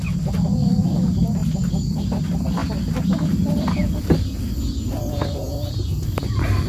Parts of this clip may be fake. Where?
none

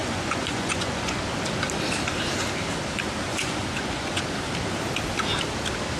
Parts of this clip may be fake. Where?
0.0-1.2 (vocoder, Vocos); 3.3-4.2